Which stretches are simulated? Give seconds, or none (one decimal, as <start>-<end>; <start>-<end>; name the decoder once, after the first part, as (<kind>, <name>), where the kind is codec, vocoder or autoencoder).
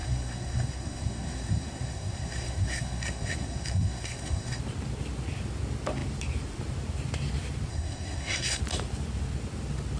0.0-4.6 (codec, SNAC); 7.7-8.6